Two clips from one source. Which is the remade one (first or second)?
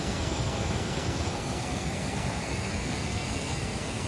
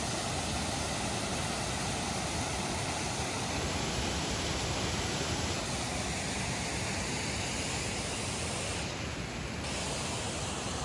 first